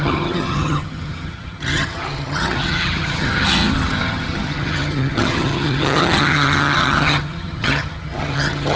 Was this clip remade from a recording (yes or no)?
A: yes